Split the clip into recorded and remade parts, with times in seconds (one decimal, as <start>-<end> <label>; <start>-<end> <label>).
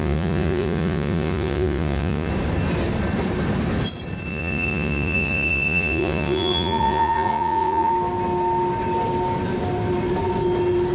0.0-2.3 remade; 2.3-4.3 recorded; 4.3-7.9 remade; 7.9-10.9 recorded